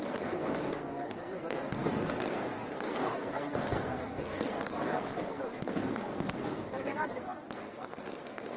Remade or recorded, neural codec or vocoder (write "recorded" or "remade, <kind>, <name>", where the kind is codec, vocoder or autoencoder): remade, codec, SNAC